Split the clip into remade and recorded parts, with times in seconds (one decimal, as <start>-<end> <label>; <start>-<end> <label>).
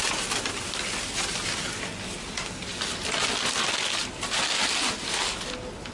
0.0-5.9 recorded